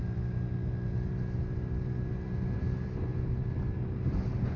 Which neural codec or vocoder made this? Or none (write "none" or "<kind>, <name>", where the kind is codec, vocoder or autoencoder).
none